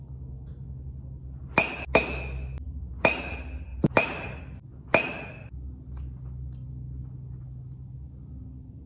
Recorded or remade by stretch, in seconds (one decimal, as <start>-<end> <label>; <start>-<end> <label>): 0.0-3.7 recorded; 3.7-4.4 remade; 4.4-8.9 recorded